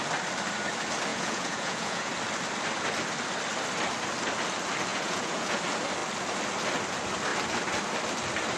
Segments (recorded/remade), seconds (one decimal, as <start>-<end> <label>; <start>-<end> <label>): 0.0-1.1 recorded; 1.1-2.1 remade; 2.1-4.9 recorded; 4.9-5.6 remade; 5.6-8.6 recorded